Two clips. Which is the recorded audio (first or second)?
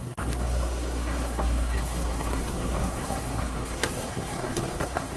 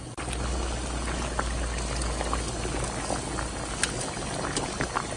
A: second